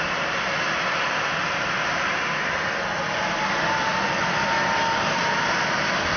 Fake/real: real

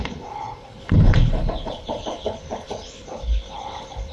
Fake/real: fake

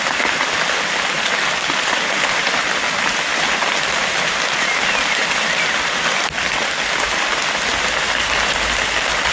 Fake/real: real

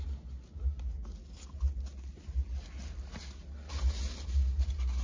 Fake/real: real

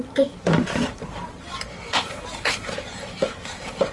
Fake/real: fake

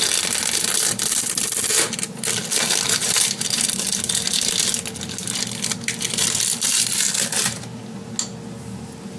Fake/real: real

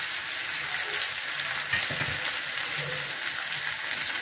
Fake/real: real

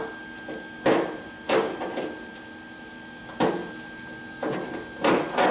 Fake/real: real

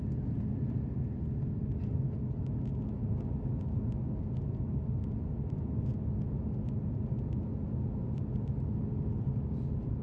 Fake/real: real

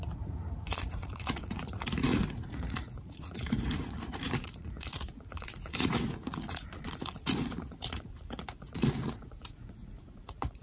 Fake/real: fake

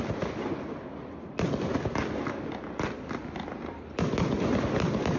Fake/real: real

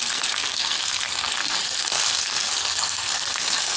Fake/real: fake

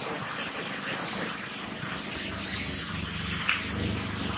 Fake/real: real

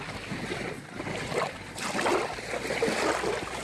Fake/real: real